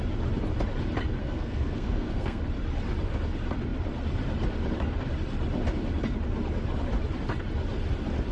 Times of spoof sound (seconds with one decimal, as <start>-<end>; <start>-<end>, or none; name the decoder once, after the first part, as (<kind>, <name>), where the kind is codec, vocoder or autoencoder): 1.2-2.4 (codec, SNAC)